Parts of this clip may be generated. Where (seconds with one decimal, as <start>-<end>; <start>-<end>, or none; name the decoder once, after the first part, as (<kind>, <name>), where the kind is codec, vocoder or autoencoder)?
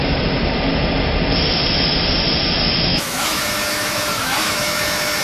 2.9-5.2 (autoencoder, DAC-VAE)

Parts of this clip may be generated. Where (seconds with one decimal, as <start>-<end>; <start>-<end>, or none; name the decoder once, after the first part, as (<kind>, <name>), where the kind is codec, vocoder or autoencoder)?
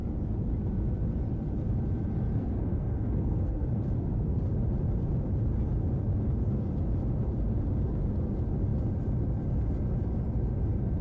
2.3-4.4 (codec, SNAC)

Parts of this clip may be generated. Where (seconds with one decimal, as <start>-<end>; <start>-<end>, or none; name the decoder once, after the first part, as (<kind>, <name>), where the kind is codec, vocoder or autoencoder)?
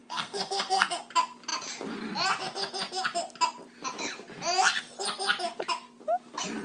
0.0-1.0 (codec, SNAC)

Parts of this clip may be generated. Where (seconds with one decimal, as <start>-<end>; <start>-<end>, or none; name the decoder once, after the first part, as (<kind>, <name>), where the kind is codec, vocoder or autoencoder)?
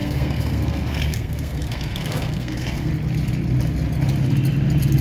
0.0-2.9 (codec, SNAC)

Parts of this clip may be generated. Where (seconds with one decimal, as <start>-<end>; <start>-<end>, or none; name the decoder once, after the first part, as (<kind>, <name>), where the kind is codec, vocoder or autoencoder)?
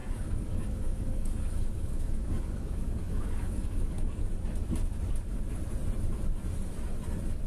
0.0-4.3 (codec, DAC)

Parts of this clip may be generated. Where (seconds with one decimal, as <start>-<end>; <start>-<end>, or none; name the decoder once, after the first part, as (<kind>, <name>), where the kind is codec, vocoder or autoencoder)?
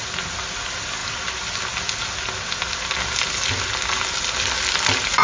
none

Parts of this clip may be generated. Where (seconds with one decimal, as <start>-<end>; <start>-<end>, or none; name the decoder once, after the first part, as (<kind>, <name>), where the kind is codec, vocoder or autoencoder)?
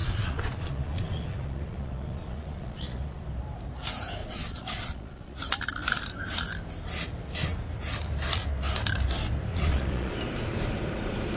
0.0-3.2 (vocoder, Vocos); 4.2-5.4; 9.5-10.1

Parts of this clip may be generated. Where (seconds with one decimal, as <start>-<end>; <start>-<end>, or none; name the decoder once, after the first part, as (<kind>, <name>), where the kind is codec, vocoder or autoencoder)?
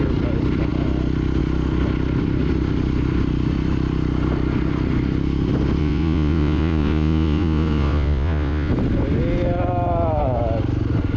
5.8-8.7 (vocoder, Vocos)